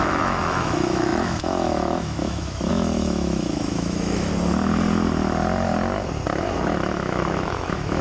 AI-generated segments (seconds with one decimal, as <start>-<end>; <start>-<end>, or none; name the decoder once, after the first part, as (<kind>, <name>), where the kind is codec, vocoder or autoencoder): 0.0-4.3 (autoencoder, DAC-VAE); 6.4-8.0